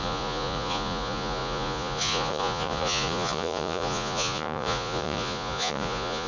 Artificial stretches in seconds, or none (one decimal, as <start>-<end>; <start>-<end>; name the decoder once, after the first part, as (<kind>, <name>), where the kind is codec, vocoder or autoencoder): 0.0-6.3 (vocoder, Vocos)